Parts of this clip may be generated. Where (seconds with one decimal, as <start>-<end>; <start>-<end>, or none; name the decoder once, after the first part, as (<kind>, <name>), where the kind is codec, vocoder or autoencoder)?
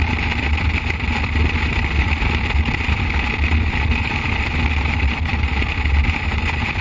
none